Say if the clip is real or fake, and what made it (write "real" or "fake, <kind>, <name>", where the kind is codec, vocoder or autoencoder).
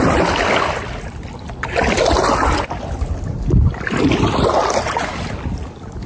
real